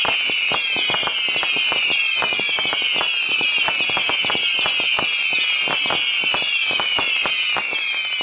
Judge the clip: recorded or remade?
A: recorded